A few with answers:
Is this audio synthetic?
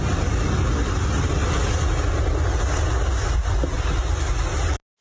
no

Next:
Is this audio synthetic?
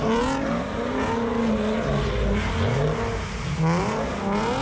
no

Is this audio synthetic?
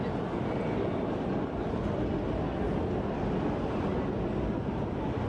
no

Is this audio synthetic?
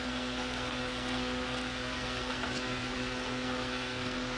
yes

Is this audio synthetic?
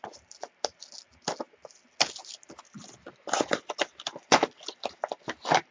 no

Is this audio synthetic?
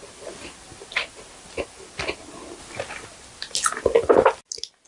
no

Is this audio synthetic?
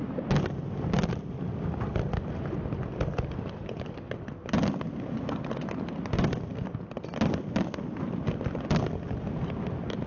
no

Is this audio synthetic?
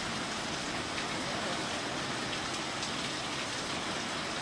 no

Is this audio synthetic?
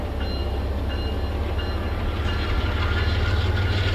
no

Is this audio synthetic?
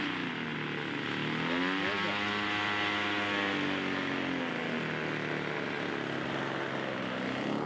no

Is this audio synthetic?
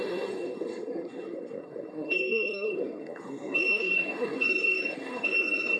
yes